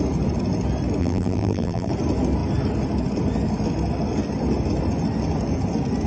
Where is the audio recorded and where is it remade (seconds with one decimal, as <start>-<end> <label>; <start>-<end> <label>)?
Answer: 0.0-1.0 recorded; 1.0-1.9 remade; 1.9-6.1 recorded